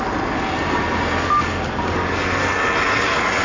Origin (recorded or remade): recorded